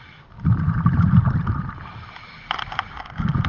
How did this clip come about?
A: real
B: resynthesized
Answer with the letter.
A